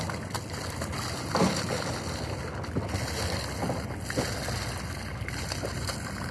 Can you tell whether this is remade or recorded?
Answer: recorded